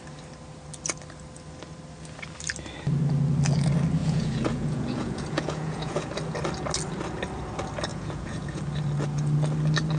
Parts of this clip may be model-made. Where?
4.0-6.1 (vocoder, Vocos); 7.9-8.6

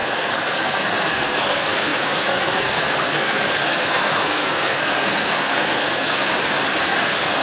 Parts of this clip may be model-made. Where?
0.0-6.3 (codec, SNAC); 6.8-7.4

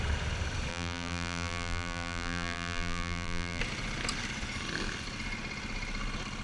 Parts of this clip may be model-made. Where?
0.7-3.6 (vocoder, BigVGAN v2)

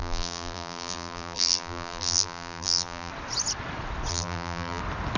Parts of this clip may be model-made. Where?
0.0-3.1 (vocoder, BigVGAN v2); 4.1-4.8

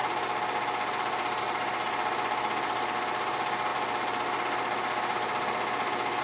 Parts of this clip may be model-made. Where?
none

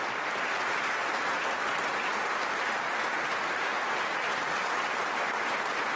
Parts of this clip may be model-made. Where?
none